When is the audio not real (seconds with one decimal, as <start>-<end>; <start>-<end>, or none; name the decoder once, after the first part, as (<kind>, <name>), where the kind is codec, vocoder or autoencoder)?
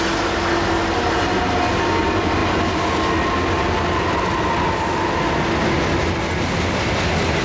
none